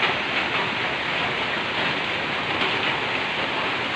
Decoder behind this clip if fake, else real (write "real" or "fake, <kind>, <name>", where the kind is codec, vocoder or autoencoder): real